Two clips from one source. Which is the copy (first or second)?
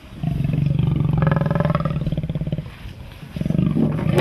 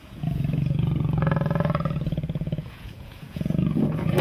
second